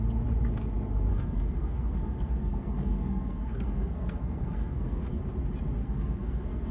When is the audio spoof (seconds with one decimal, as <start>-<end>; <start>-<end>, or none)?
1.1-5.1; 5.8-6.7